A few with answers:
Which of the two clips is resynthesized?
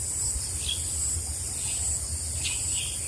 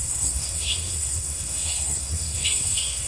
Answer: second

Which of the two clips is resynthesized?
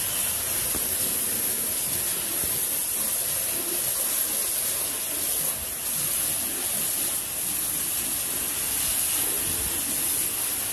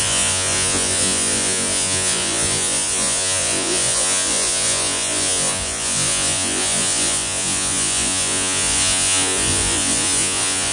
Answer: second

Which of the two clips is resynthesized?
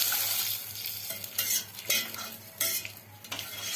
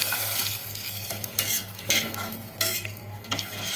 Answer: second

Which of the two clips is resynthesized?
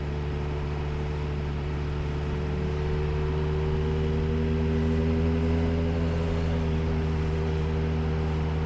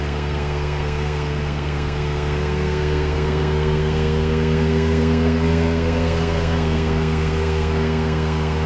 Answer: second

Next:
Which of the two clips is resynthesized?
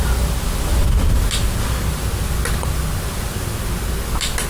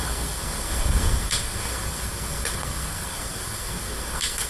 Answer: second